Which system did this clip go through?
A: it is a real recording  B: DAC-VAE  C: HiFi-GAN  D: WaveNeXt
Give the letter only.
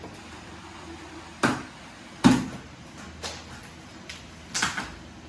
A